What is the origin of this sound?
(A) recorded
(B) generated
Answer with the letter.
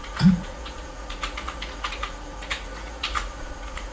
B